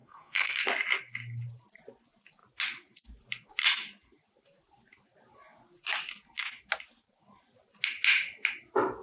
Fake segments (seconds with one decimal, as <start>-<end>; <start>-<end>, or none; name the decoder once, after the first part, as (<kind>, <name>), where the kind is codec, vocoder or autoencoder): 0.0-0.6 (codec, SNAC)